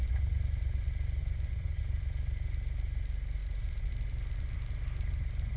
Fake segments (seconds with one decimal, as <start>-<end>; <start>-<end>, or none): 1.2-1.8; 3.4-3.9